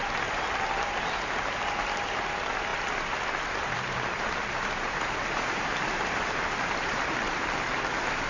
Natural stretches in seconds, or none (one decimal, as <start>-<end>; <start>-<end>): 2.7-3.7